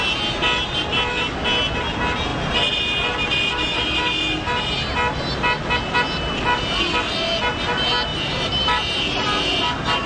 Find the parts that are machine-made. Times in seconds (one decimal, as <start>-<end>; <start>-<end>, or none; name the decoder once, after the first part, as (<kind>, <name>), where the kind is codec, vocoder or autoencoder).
8.1-9.0 (vocoder, BigVGAN v2)